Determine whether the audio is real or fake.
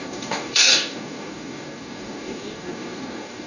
fake